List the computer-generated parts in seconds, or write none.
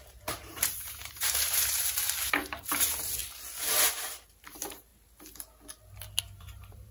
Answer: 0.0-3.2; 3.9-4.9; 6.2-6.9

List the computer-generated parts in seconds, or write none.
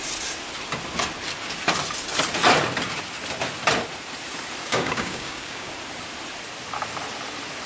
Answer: 4.6-5.7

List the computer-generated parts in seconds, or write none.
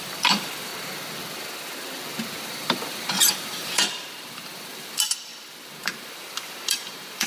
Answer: 0.0-0.7; 2.4-7.3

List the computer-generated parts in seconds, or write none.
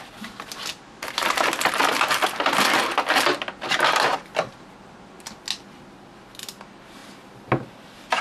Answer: none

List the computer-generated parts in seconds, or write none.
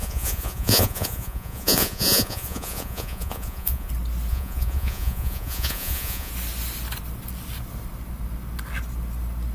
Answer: 0.0-3.9; 4.3-6.3